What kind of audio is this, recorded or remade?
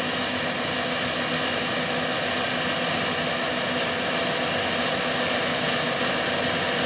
recorded